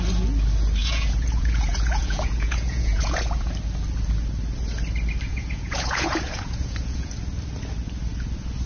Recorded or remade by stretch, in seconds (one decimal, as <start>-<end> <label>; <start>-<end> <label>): 0.0-0.8 recorded; 0.8-3.5 remade; 3.5-5.3 recorded; 5.3-7.1 remade; 7.1-8.7 recorded